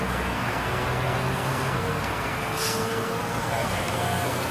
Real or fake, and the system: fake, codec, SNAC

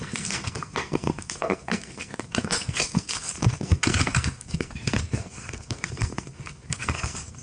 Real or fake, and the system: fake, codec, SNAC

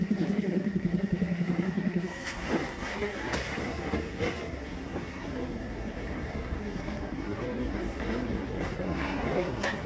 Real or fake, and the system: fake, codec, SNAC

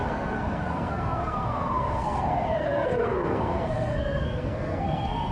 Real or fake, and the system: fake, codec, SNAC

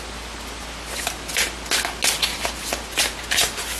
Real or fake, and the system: real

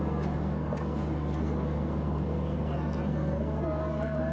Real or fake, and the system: fake, codec, SNAC